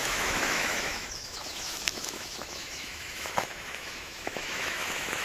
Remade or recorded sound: remade